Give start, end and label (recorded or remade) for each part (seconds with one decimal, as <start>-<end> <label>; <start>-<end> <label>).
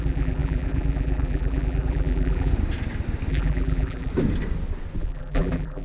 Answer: 0.0-2.5 remade; 2.5-3.3 recorded; 3.3-4.1 remade; 4.1-5.0 recorded; 5.0-5.8 remade